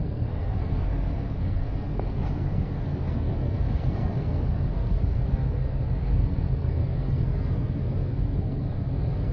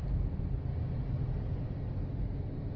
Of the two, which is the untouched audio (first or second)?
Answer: second